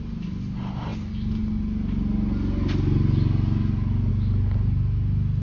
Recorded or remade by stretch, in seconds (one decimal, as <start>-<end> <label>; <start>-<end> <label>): 0.0-5.4 recorded